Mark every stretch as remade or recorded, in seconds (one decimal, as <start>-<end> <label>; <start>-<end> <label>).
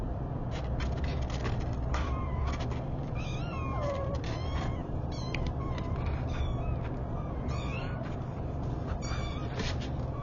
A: 0.0-0.4 remade; 0.4-1.9 recorded; 1.9-2.4 remade; 2.4-3.4 recorded; 3.4-10.2 remade